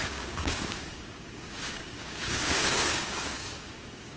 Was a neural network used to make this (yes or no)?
yes